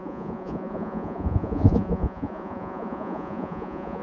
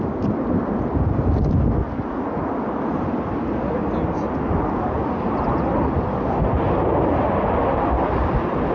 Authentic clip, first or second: second